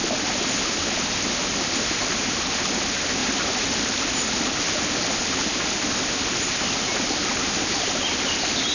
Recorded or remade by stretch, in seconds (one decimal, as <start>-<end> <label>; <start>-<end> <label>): 0.0-8.7 recorded